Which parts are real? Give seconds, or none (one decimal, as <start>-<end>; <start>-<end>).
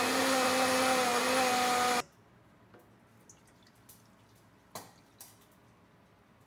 0.0-6.5